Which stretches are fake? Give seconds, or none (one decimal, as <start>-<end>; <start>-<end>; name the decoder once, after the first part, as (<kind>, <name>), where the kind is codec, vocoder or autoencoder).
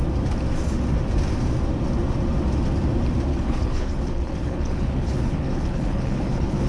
3.3-6.7 (codec, HILCodec)